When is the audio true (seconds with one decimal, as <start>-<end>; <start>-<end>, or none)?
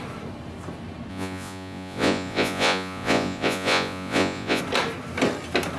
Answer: 0.0-1.1; 4.6-5.8